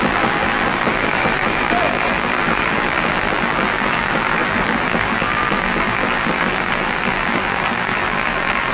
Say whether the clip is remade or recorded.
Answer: remade